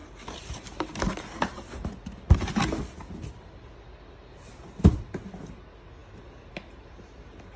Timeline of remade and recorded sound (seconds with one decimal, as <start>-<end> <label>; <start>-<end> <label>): 0.0-7.6 recorded